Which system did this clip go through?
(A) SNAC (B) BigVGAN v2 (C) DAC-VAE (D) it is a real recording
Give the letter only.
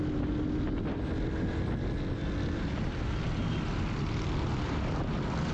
D